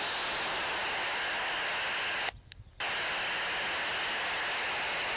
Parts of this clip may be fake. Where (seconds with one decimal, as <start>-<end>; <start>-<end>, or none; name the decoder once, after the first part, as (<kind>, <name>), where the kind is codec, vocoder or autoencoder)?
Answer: none